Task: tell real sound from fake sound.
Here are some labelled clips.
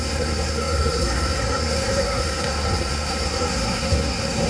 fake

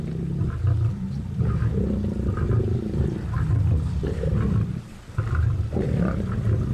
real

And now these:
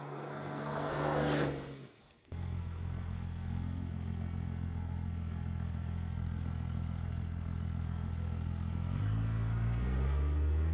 fake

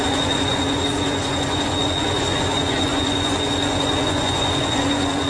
fake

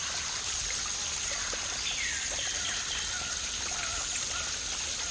real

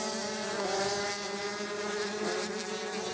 fake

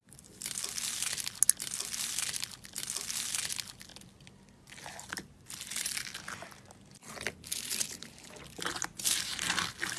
real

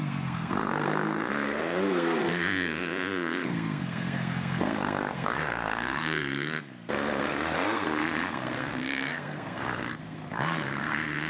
fake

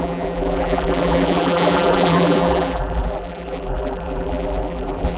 fake